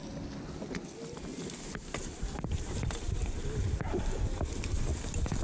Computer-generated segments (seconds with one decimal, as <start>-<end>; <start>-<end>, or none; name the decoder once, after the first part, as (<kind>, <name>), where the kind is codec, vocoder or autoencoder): 1.3-4.5 (vocoder, BigVGAN v2)